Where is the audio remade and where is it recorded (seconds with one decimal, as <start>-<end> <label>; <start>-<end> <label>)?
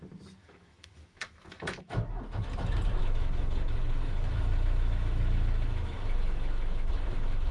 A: 0.0-0.4 recorded; 0.4-2.2 remade; 2.2-3.0 recorded; 3.0-7.5 remade